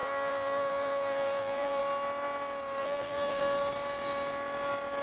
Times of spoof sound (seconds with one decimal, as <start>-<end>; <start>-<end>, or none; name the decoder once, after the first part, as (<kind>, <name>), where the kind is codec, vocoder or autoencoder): 0.0-1.8 (vocoder, BigVGAN v2); 2.8-3.4